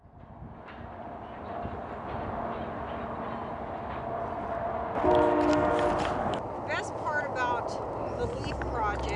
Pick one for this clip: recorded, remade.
recorded